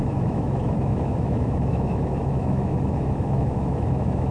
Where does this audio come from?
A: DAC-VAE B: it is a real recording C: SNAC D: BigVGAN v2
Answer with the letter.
A